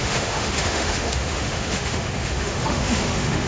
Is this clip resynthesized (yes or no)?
yes